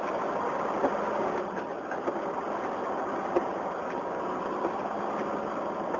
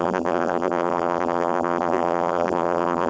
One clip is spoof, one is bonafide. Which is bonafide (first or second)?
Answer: first